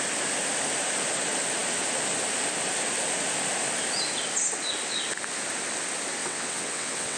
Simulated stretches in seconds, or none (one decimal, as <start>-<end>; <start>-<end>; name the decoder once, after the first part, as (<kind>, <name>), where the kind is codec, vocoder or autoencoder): 6.2-7.2 (vocoder, WaveNeXt)